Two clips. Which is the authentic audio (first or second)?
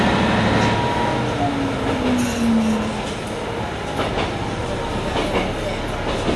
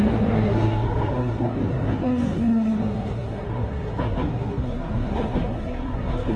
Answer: first